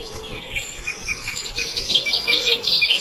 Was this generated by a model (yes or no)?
yes